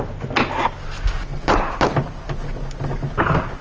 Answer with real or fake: real